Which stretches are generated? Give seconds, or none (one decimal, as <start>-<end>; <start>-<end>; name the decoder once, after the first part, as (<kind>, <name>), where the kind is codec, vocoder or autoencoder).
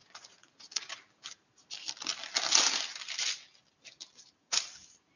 0.0-0.9 (vocoder, Vocos)